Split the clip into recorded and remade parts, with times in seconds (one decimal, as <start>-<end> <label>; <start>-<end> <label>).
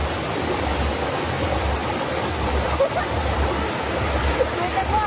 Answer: 0.0-5.1 recorded